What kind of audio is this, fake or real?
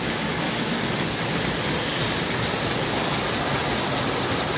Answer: real